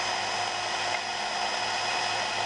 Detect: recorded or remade recorded